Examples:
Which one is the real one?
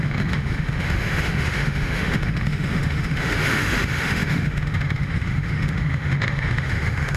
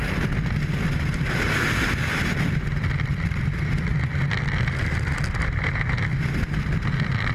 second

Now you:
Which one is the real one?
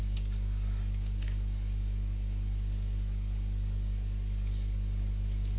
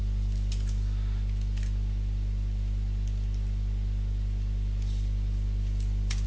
second